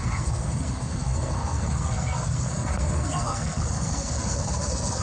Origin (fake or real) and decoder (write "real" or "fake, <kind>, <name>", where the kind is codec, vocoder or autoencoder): fake, codec, SNAC